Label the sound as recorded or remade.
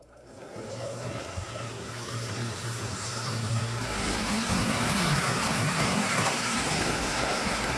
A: remade